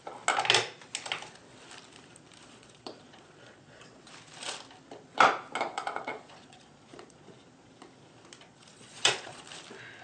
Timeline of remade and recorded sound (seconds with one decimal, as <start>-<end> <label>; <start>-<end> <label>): 0.0-2.5 recorded; 2.5-4.1 remade; 4.1-5.7 recorded; 5.7-7.3 remade; 7.3-8.5 recorded; 8.5-9.4 remade; 9.4-10.0 recorded